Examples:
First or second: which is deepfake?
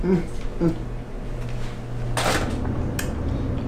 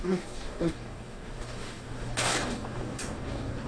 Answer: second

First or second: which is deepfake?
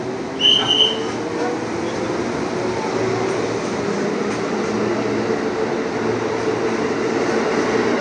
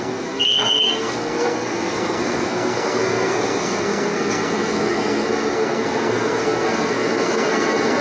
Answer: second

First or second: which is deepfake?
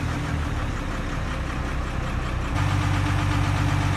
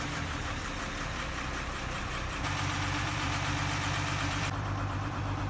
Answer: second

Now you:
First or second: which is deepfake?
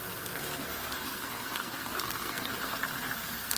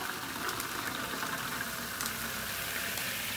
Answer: first